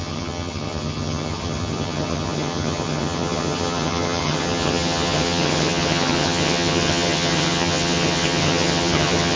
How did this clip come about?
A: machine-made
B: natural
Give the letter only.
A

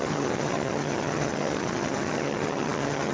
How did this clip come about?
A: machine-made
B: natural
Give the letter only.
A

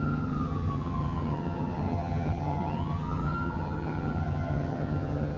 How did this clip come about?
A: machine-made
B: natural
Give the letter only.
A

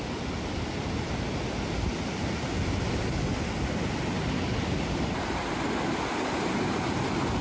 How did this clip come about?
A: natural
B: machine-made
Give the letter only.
A